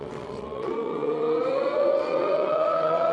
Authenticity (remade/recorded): remade